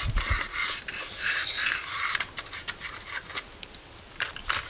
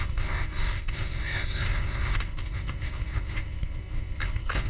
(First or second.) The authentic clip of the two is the first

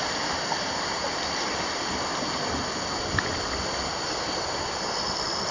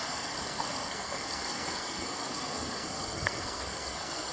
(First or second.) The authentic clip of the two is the first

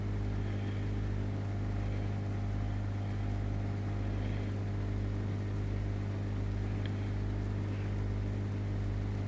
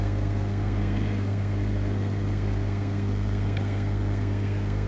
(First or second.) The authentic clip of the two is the first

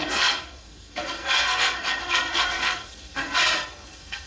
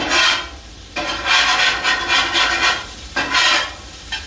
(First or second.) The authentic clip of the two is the second